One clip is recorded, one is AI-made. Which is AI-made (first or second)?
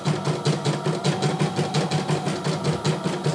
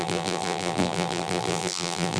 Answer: second